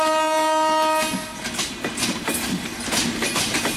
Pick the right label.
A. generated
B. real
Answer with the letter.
B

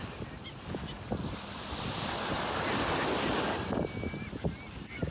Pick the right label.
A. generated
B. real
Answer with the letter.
B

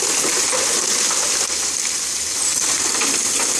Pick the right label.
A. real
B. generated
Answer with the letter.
A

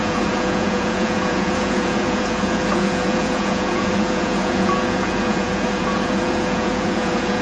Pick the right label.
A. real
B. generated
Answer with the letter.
B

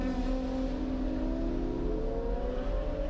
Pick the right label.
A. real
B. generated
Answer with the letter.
A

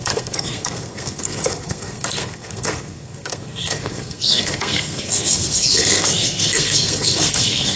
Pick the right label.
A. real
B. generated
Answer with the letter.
B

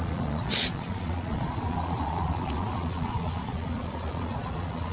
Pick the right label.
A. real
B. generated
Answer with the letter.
B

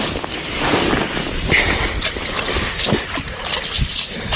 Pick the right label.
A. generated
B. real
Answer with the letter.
B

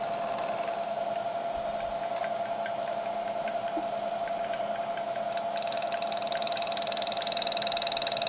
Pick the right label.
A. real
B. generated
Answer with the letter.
A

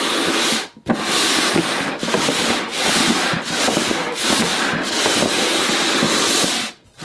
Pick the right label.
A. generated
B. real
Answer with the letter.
B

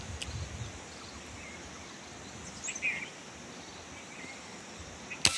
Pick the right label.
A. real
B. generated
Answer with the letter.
A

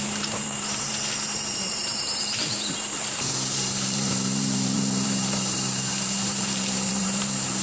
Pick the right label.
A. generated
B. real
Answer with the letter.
A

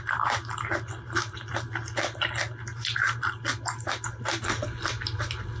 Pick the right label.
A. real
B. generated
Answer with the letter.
A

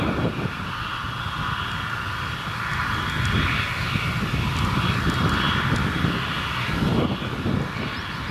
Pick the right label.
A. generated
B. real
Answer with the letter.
B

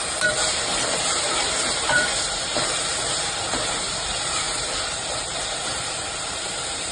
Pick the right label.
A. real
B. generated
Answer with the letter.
B